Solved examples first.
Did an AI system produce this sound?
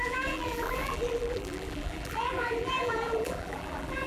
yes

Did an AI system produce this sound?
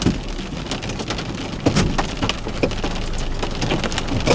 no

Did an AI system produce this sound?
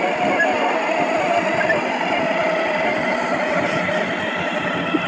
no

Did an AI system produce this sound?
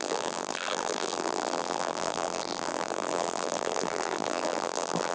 yes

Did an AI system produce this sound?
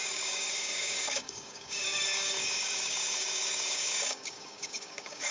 yes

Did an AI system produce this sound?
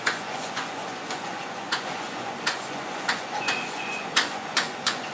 yes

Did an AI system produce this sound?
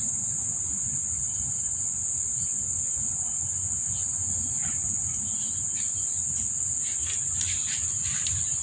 no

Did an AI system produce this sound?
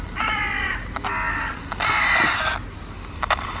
yes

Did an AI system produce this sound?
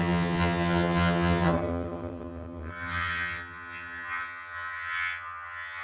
yes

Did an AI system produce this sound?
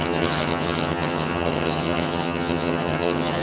yes